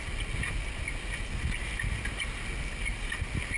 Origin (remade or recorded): recorded